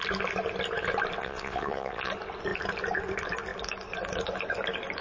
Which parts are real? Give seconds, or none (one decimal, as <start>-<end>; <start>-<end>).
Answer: 0.0-1.2; 2.1-5.0